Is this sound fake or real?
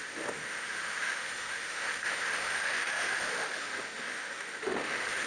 fake